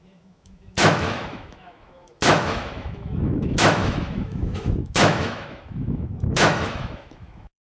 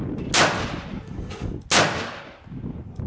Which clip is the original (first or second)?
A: second